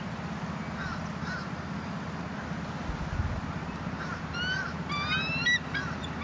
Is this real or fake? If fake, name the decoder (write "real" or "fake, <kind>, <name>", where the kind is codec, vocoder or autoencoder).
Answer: real